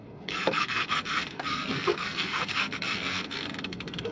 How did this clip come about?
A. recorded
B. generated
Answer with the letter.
B